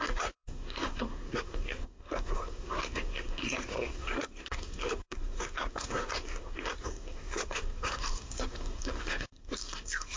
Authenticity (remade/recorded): remade